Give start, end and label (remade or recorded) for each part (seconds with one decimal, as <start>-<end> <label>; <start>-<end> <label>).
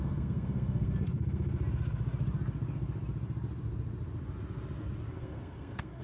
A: 0.0-1.5 remade; 1.5-5.1 recorded; 5.1-6.0 remade